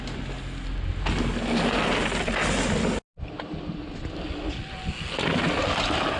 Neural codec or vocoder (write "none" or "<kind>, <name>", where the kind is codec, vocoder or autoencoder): none